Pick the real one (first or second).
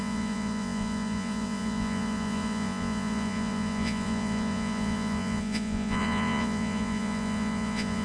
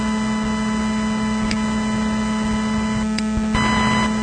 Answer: second